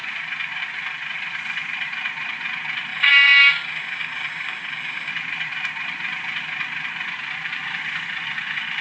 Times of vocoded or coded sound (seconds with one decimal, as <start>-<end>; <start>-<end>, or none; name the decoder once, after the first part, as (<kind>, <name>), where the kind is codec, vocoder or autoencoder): 2.9-5.1 (codec, DAC)